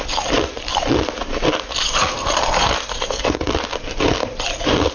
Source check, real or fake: real